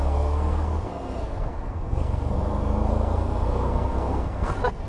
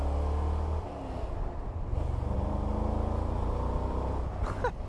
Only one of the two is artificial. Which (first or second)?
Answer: first